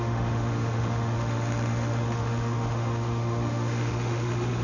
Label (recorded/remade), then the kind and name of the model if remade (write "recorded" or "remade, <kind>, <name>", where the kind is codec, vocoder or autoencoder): remade, autoencoder, DAC-VAE